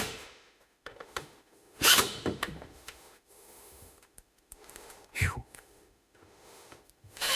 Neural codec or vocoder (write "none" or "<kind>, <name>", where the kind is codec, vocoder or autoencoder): autoencoder, DAC-VAE